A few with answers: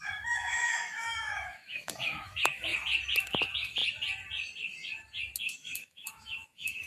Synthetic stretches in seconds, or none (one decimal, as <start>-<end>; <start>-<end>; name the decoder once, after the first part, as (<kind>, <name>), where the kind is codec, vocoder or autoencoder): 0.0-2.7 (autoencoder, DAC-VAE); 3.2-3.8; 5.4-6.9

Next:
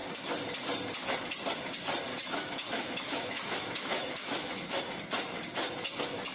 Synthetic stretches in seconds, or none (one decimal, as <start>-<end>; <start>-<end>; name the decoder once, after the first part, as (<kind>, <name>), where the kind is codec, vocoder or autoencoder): 2.1-4.8 (autoencoder, DAC-VAE)

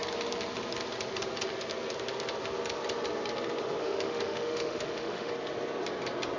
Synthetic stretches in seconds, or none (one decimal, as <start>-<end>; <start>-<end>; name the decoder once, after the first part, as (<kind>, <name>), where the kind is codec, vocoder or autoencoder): 3.8-5.3 (autoencoder, DAC-VAE)